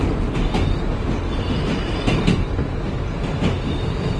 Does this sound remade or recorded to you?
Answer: recorded